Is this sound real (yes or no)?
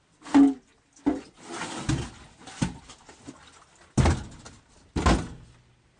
yes